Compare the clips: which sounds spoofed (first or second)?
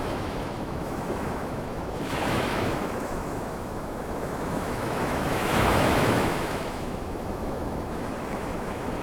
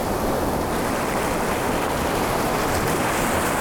first